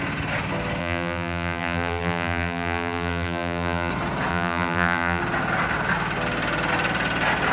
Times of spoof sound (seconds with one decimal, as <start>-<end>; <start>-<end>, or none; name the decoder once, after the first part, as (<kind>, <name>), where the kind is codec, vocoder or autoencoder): 0.8-3.9 (vocoder, BigVGAN v2); 4.3-5.2